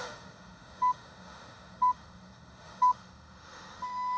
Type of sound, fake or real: fake